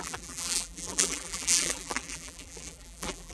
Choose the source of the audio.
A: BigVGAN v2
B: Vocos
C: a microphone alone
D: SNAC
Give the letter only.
A